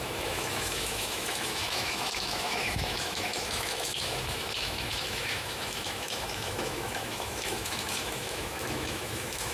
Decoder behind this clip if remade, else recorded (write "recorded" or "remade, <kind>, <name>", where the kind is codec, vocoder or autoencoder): remade, autoencoder, DAC-VAE